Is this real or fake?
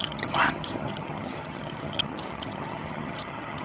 fake